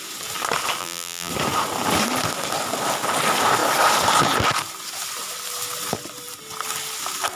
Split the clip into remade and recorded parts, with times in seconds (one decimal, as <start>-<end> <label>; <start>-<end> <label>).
0.0-0.8 recorded; 0.8-1.3 remade; 1.3-7.4 recorded